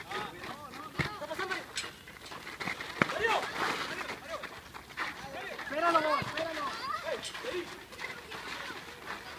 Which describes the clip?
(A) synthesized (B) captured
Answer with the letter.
B